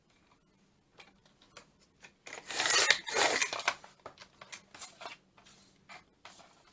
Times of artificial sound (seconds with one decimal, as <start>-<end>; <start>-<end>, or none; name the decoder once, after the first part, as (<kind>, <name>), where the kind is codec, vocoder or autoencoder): none